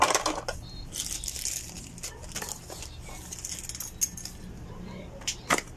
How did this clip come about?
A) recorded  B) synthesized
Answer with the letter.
A